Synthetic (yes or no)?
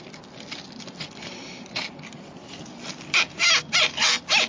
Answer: no